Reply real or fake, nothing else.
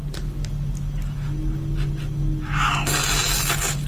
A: real